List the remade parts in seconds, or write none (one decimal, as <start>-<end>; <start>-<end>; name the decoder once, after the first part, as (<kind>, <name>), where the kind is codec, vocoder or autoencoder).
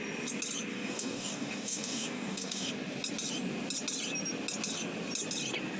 0.7-2.7 (codec, DAC)